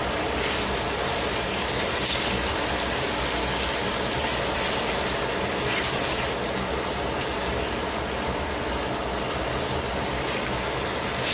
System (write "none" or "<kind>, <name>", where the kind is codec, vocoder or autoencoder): none